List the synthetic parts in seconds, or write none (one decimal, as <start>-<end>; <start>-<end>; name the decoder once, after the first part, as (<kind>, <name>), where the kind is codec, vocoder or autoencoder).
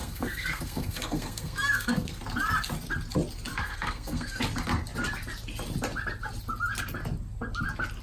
0.0-2.2 (codec, SNAC); 3.5-4.4